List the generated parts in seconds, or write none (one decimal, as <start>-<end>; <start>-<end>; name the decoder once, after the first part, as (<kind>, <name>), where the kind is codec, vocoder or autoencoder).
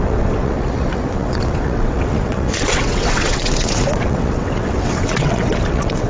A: 0.0-6.1 (vocoder, WaveNeXt)